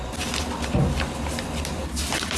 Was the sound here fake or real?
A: real